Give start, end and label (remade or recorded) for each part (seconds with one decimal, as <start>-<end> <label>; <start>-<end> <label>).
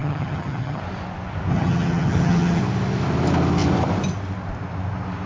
0.0-0.8 remade; 0.8-1.5 recorded; 1.5-2.6 remade; 2.6-5.3 recorded